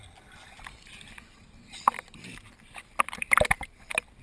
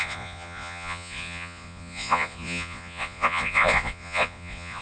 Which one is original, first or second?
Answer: first